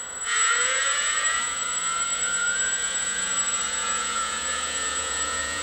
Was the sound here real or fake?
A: fake